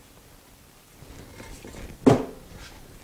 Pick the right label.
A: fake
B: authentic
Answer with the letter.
B